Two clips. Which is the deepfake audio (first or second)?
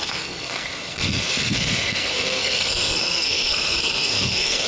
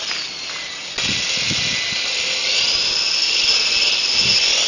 first